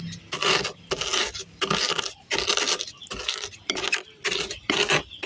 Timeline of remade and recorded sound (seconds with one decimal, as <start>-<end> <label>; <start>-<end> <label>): 0.0-5.3 recorded